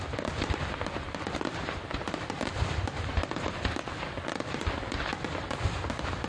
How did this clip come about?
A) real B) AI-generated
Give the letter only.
A